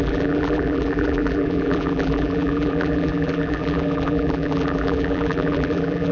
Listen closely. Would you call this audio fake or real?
fake